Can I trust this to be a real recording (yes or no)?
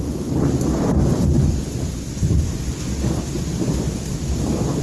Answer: yes